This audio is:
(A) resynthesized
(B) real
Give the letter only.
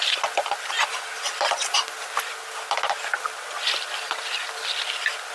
B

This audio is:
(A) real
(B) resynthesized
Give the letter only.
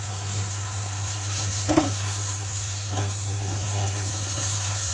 B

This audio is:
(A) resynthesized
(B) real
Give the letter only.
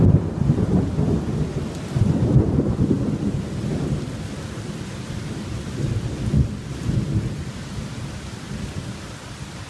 B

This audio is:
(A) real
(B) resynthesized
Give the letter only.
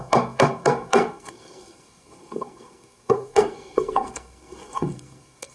B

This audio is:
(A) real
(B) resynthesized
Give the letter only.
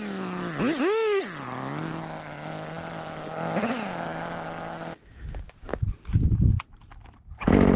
A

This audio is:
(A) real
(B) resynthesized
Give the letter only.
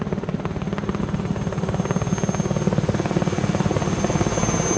A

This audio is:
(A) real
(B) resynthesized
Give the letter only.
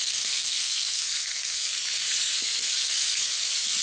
B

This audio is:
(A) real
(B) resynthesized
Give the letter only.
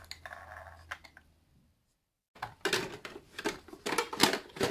A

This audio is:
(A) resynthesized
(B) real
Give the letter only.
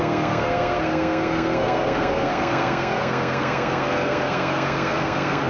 A